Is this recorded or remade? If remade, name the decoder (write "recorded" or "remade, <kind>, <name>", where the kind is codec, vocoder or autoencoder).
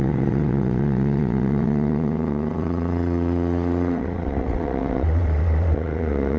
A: remade, vocoder, WaveNeXt